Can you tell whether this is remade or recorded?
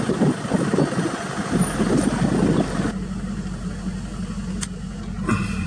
recorded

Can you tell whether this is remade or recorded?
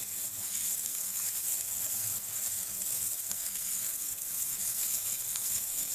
remade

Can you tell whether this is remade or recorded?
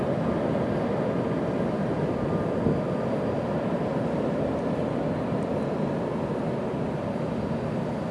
recorded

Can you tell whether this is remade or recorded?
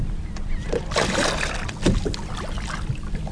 recorded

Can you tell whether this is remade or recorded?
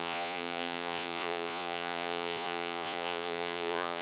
remade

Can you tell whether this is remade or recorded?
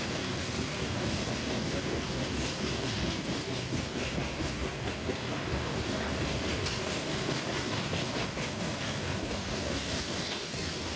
remade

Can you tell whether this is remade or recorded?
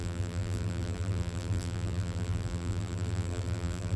remade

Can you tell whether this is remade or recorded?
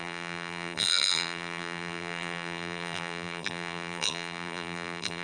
remade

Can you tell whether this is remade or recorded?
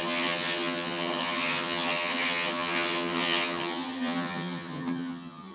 remade